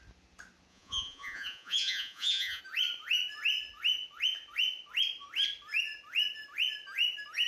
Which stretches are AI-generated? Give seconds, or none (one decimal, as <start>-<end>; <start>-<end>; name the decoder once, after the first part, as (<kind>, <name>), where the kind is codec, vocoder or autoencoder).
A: 0.7-2.6 (vocoder, Vocos)